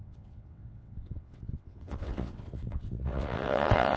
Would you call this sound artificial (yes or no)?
yes